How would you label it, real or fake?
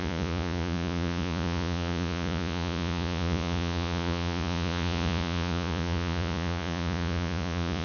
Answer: fake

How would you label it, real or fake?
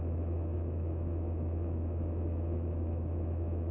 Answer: fake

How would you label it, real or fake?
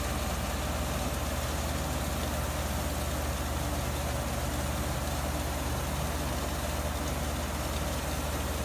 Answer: real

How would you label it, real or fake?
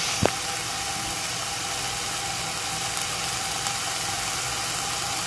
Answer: real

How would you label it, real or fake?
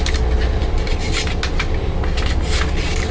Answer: real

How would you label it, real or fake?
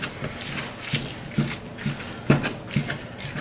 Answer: real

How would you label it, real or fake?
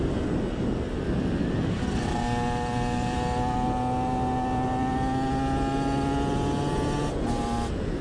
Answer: real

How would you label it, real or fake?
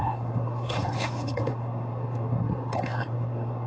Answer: fake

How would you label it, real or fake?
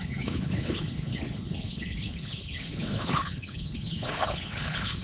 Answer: fake